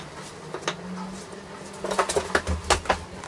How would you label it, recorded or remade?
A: recorded